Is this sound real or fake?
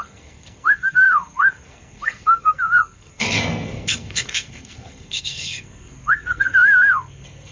fake